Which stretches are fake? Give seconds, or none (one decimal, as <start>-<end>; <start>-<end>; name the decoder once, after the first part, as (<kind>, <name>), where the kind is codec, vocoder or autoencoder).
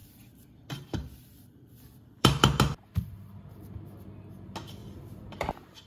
0.0-2.6 (vocoder, BigVGAN v2); 4.8-5.5